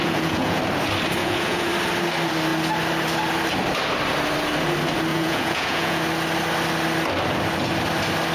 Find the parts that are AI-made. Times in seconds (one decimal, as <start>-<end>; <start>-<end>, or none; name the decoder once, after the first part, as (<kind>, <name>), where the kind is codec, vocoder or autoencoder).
0.0-0.6 (vocoder, Vocos); 1.2-1.7; 5.1-6.0